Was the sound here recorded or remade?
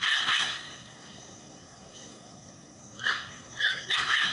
remade